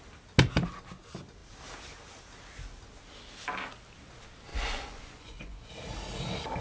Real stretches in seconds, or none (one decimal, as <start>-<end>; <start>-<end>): 0.0-4.5; 5.7-6.6